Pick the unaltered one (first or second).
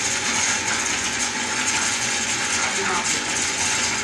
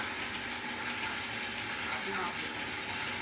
second